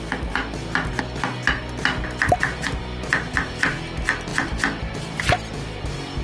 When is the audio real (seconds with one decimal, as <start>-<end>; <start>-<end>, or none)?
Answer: 0.0-6.2